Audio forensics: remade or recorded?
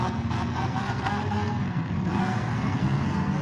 remade